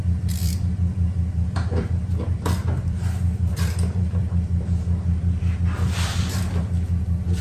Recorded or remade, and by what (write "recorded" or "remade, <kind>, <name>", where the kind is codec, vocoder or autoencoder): remade, vocoder, BigVGAN v2